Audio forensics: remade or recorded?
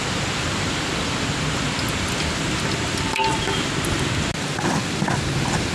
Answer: recorded